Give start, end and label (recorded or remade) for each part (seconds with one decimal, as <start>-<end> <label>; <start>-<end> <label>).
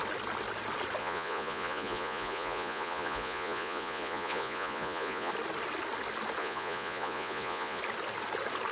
0.0-1.0 recorded; 1.0-5.3 remade; 5.3-6.4 recorded; 6.4-7.8 remade; 7.8-8.7 recorded